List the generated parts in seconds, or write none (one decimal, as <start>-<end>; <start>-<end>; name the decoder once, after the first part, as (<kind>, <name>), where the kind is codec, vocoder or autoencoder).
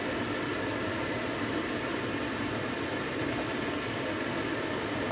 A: 0.5-3.6 (vocoder, BigVGAN v2)